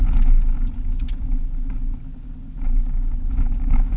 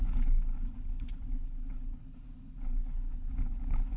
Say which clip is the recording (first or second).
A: first